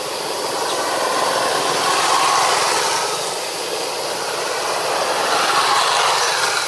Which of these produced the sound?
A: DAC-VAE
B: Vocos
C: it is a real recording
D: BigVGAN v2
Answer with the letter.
C